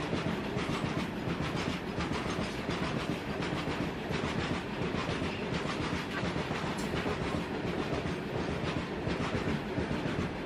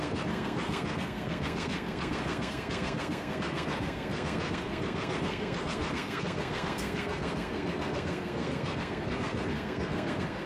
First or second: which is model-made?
second